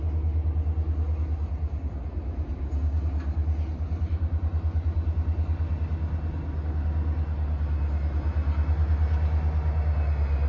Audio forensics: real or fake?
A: real